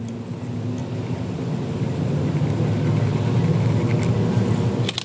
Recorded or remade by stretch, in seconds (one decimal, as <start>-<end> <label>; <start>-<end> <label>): 0.0-5.0 recorded